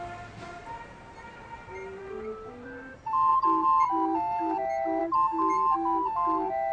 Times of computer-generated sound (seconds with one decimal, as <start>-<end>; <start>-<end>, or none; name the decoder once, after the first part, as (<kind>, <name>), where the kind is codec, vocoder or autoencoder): none